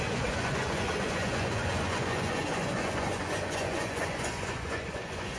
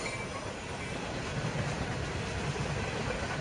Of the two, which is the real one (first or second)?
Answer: second